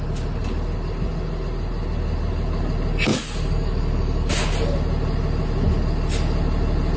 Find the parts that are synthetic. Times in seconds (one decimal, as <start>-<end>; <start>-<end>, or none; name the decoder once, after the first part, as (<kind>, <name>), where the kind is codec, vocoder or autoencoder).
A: 3.1-4.5 (codec, DAC)